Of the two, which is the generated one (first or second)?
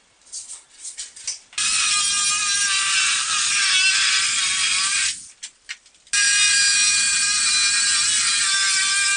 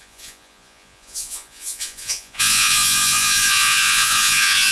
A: second